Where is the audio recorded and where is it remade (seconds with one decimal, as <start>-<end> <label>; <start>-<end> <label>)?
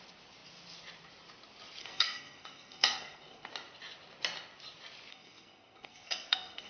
0.0-1.8 recorded; 1.8-3.5 remade; 3.5-5.1 recorded; 5.1-6.7 remade